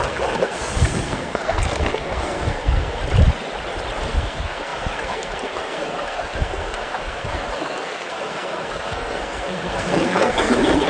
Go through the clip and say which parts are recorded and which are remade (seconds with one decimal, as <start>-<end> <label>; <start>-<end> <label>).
0.0-3.0 remade; 3.0-4.0 recorded; 4.0-10.9 remade